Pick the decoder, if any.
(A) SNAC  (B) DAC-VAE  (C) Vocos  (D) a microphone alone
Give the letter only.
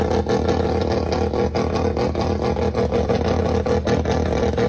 D